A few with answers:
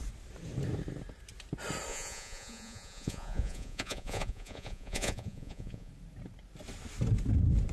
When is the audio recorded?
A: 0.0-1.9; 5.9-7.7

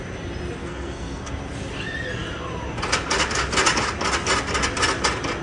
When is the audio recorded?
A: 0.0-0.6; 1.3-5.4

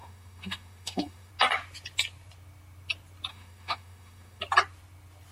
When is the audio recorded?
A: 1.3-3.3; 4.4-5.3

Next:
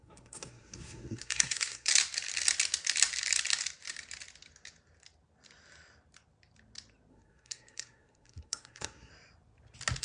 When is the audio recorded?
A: 1.9-7.1; 9.1-10.0

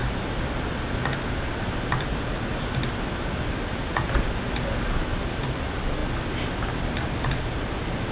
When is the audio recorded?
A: 0.0-8.1

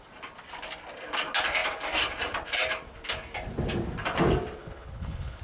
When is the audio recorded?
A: 0.0-4.6

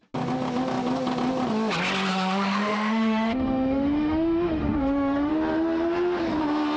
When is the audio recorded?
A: 0.0-2.1; 5.3-6.8

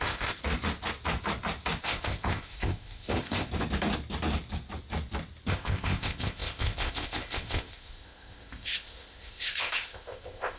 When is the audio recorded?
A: 0.4-1.8; 3.5-5.5